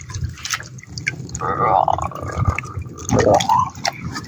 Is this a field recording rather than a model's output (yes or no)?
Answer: yes